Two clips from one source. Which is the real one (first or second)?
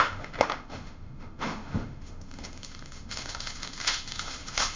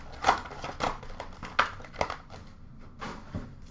second